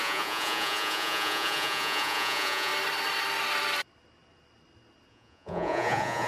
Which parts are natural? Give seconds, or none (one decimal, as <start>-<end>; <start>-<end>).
2.7-5.1

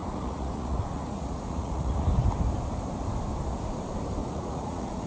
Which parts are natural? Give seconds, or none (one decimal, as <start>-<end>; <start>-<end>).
2.1-4.2

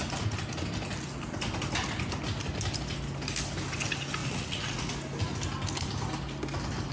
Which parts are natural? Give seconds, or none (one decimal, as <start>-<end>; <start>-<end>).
0.0-4.2; 4.9-6.9

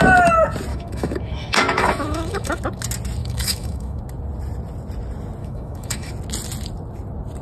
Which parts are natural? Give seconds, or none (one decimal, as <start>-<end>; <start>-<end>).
0.0-0.7; 2.6-3.2; 4.0-5.4; 6.1-7.4

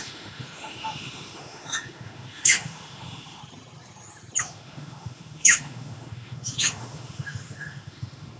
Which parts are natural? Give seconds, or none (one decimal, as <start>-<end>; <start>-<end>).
3.4-4.4

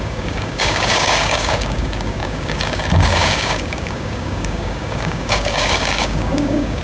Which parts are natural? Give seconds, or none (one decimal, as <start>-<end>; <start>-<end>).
none

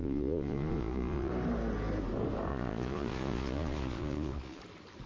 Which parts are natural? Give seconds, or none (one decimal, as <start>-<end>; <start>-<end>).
1.3-2.5; 4.6-5.1

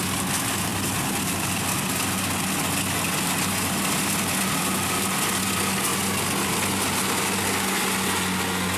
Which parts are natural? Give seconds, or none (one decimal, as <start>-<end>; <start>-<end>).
0.0-8.8